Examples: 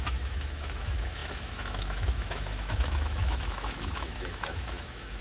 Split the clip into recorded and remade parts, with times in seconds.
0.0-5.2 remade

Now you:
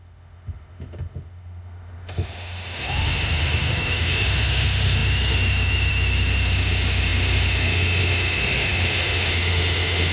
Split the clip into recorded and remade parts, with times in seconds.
0.0-10.1 remade

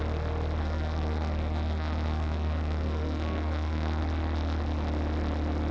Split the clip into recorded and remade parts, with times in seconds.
0.0-0.6 recorded; 0.6-4.0 remade; 4.0-5.7 recorded

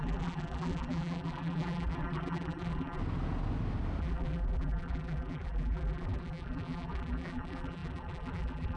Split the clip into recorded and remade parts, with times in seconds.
0.0-3.0 remade; 3.0-4.0 recorded; 4.0-8.8 remade

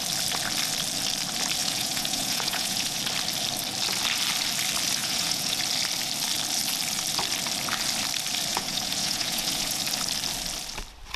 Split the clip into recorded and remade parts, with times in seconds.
0.0-1.6 recorded; 1.6-3.0 remade; 3.0-5.0 recorded; 5.0-5.6 remade; 5.6-8.5 recorded; 8.5-9.8 remade; 9.8-11.2 recorded

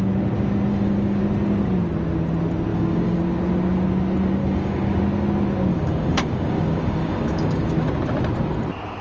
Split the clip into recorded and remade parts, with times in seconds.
0.0-0.7 recorded; 0.7-1.2 remade; 1.2-2.7 recorded; 2.7-3.2 remade; 3.2-4.4 recorded; 4.4-5.0 remade; 5.0-5.7 recorded; 5.7-7.9 remade; 7.9-9.0 recorded